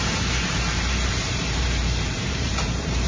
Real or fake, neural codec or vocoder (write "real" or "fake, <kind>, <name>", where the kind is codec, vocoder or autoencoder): fake, vocoder, BigVGAN v2